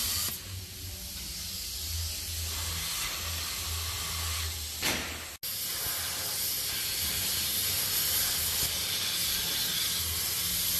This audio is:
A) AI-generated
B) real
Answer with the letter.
B